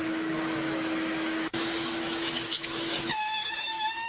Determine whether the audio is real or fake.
fake